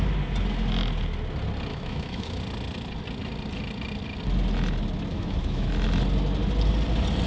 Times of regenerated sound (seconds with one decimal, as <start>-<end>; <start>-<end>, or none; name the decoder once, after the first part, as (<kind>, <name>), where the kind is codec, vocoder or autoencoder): 1.7-2.4 (autoencoder, DAC-VAE); 5.1-5.7